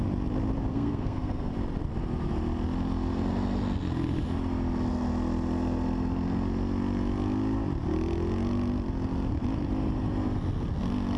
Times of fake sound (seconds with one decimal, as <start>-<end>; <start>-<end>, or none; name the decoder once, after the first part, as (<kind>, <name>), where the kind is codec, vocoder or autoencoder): 0.7-1.5 (codec, SNAC)